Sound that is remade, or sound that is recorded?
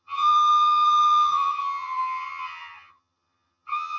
remade